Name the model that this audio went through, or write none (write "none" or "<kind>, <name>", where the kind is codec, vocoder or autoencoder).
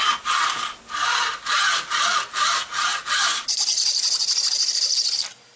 none